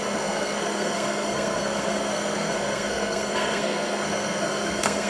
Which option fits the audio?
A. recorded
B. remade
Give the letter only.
B